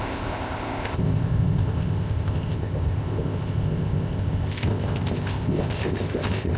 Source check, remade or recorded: remade